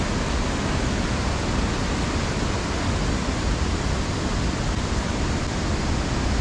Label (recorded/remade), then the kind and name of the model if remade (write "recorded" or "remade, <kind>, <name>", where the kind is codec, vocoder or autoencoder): recorded